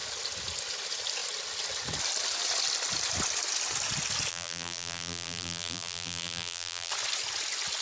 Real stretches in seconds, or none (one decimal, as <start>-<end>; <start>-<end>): 0.0-4.3; 6.9-7.8